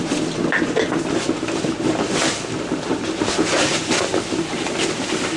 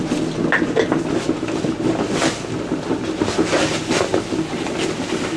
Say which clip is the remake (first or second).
first